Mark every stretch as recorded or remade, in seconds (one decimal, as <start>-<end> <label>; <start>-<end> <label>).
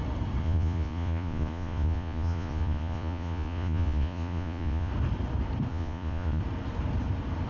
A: 0.0-0.4 recorded; 0.4-4.9 remade; 4.9-5.7 recorded; 5.7-6.4 remade; 6.4-7.5 recorded